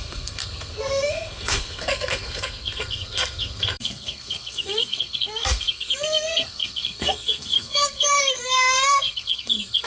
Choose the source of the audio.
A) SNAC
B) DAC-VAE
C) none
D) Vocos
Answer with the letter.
A